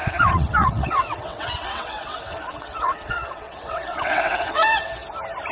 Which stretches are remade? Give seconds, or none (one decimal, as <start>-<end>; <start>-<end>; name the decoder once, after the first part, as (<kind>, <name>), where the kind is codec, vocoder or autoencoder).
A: 0.0-5.0 (vocoder, WaveNeXt)